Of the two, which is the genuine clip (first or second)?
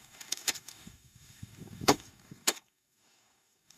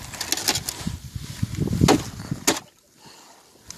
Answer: second